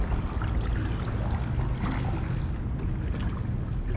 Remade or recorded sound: recorded